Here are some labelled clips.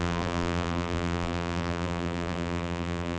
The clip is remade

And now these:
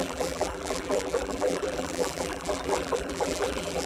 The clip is remade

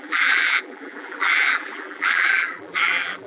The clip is remade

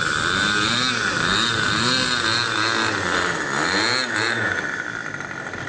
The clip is recorded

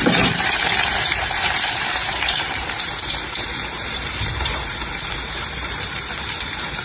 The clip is remade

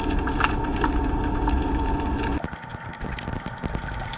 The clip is recorded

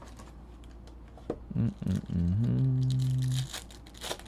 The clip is recorded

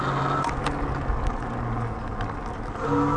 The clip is recorded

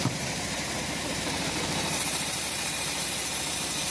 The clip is remade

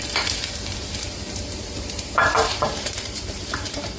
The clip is remade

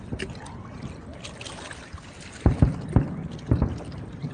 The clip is recorded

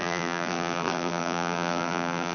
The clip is remade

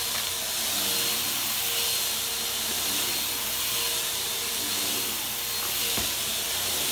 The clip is recorded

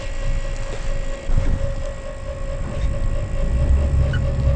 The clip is recorded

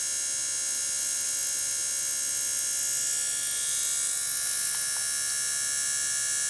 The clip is recorded